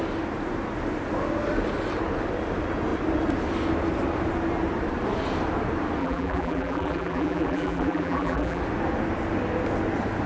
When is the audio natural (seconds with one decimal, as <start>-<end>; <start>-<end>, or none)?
0.0-6.0; 8.6-10.3